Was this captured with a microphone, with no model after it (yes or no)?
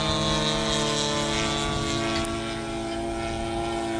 yes